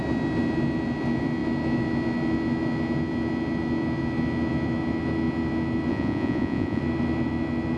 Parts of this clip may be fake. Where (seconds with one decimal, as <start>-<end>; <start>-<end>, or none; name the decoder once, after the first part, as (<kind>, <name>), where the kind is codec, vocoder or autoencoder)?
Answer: 5.9-6.8 (vocoder, Vocos)